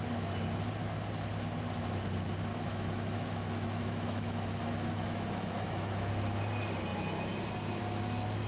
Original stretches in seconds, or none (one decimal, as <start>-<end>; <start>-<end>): 0.0-2.5; 6.1-8.5